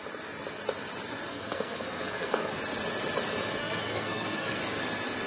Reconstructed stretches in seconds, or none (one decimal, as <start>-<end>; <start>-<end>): 1.3-2.5; 3.6-4.6